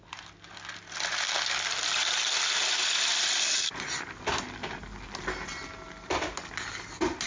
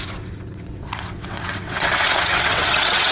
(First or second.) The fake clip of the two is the second